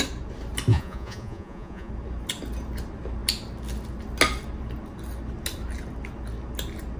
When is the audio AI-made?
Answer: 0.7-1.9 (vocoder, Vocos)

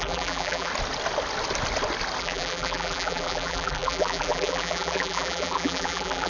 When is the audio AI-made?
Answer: 0.0-0.7 (vocoder, BigVGAN v2); 2.2-6.3

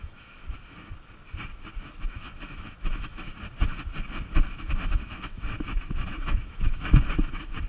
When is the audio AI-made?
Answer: 0.0-0.4 (autoencoder, DAC-VAE); 2.1-3.3; 4.5-7.7

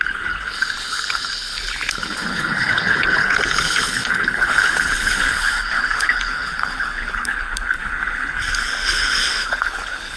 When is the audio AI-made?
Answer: 0.0-10.2 (codec, HILCodec)

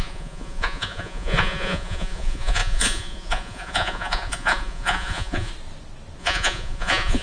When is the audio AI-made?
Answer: 0.0-5.5 (vocoder, Vocos); 6.2-7.2

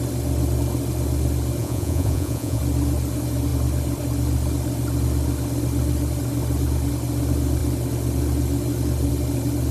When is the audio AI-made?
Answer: 1.6-2.6 (vocoder, Vocos)

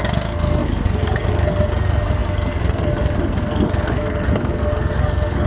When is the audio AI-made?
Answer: 0.0-5.5 (codec, SNAC)

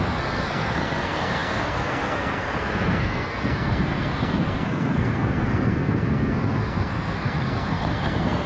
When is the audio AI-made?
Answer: 0.0-8.5 (codec, SNAC)